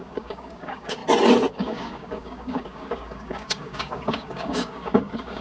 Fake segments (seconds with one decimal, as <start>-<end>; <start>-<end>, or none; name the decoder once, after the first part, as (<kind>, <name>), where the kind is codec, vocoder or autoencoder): 0.0-1.0 (codec, DAC); 1.5-5.4